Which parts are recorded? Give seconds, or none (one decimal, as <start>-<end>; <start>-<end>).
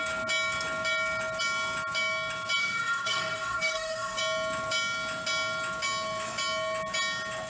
0.0-2.6; 4.2-7.5